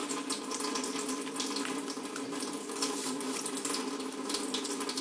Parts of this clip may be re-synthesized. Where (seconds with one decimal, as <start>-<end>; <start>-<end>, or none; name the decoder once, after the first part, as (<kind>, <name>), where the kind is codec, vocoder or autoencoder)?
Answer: 2.6-3.4 (codec, DAC)